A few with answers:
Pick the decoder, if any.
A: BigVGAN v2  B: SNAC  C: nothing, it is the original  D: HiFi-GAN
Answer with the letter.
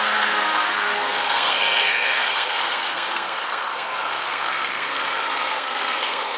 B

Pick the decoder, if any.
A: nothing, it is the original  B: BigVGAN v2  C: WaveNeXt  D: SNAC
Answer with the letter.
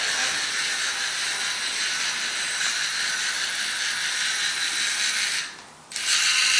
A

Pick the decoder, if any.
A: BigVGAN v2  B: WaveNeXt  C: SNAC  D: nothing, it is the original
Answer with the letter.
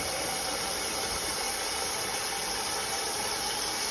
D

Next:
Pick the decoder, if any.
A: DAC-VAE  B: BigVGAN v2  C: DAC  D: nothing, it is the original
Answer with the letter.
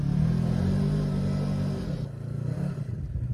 D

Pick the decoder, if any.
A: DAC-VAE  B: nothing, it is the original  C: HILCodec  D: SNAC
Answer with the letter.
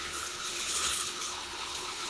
C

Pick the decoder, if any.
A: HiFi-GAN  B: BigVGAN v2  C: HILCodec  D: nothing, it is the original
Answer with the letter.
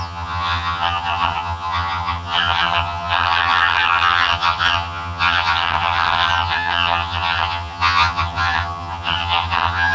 A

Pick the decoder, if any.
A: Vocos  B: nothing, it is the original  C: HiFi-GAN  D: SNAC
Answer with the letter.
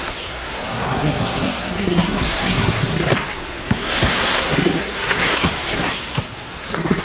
D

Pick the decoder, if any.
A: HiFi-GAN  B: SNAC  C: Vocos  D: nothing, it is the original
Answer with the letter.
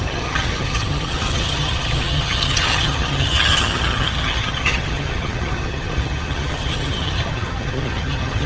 A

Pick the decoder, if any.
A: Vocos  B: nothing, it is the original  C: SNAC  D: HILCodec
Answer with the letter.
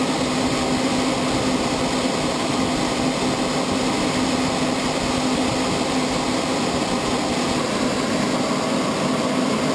B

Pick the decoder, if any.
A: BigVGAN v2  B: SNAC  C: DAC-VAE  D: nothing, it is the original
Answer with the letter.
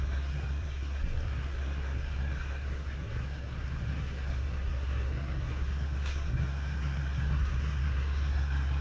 B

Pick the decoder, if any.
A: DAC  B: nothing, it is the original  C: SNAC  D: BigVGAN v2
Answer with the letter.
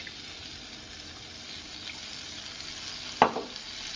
B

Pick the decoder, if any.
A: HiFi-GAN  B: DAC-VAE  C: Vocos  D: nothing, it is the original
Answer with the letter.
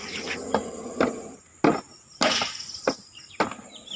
D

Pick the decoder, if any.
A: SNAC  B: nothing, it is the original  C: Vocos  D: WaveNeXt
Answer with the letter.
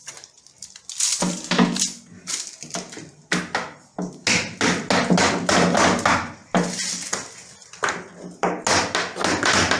B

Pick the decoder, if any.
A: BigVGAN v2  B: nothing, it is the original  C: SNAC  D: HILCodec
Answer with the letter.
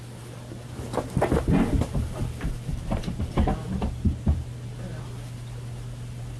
B